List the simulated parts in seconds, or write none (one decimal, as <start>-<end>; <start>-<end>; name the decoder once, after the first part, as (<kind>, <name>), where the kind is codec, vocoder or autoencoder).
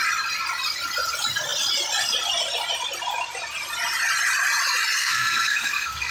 5.0-6.1 (codec, SNAC)